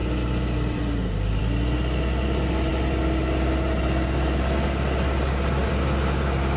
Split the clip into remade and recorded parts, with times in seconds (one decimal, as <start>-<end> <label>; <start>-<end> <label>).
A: 0.0-1.4 remade; 1.4-6.6 recorded